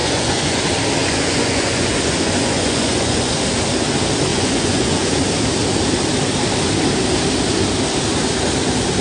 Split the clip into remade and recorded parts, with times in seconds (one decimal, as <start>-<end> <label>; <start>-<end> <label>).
0.0-0.6 remade; 0.6-1.0 recorded; 1.0-3.4 remade; 3.4-4.3 recorded; 4.3-5.2 remade; 5.2-9.0 recorded